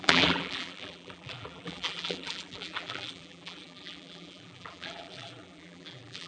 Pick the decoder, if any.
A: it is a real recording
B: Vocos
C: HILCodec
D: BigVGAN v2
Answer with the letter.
D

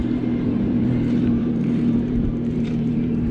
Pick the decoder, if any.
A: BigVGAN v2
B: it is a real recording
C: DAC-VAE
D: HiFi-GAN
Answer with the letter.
A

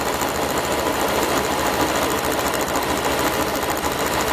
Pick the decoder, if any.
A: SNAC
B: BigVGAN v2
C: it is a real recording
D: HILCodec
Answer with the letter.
B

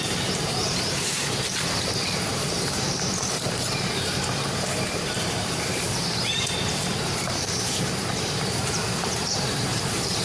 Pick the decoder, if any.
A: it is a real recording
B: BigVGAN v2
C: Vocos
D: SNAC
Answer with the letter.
B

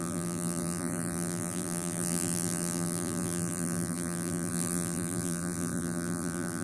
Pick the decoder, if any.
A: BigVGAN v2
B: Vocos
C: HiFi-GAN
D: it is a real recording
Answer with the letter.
A